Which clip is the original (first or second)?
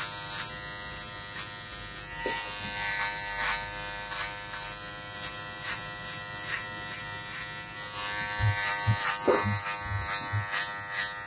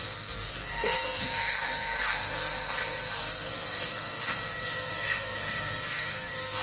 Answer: first